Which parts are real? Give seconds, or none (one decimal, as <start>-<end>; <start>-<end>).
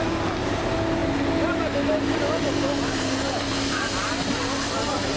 0.0-5.2